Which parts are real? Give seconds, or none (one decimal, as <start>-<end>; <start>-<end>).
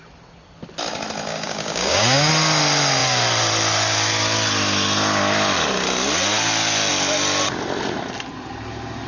0.0-1.3; 2.3-9.1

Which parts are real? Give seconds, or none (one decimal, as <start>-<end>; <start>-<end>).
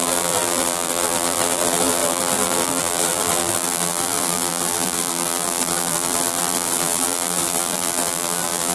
none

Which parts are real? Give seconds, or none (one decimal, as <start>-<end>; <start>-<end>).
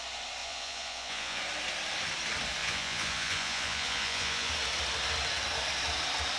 0.0-0.4; 1.4-2.6; 4.5-6.4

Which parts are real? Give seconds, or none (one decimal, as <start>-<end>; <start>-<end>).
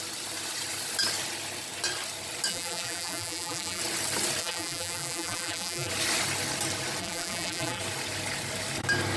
0.0-2.5; 3.8-4.4; 5.9-7.0; 7.8-9.2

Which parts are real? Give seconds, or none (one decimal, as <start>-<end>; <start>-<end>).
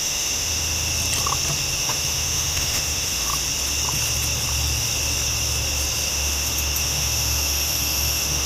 0.9-1.8; 3.3-6.1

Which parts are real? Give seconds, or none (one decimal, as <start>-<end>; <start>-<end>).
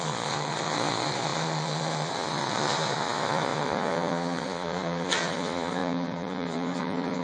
none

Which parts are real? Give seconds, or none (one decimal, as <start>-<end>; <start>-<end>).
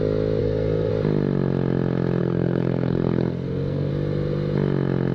0.0-0.4; 0.9-2.2; 3.9-5.1